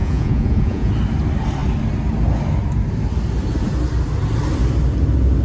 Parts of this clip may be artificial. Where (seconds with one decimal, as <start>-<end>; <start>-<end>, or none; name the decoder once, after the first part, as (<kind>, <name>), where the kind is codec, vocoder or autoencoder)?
0.0-0.9 (vocoder, Vocos)